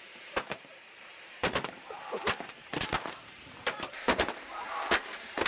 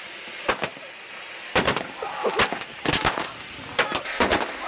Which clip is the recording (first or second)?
second